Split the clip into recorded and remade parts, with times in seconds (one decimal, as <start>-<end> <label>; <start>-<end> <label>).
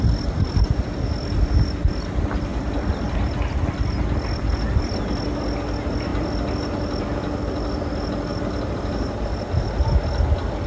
0.0-8.3 recorded; 8.3-9.9 remade; 9.9-10.7 recorded